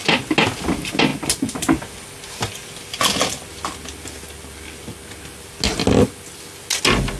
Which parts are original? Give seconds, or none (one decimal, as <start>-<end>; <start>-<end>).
0.0-7.2